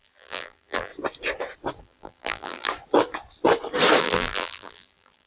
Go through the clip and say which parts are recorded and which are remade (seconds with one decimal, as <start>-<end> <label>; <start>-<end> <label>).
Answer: 0.0-0.9 remade; 0.9-1.8 recorded; 1.8-2.7 remade; 2.7-4.0 recorded; 4.0-5.3 remade